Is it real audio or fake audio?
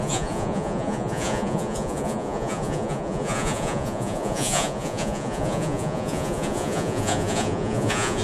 fake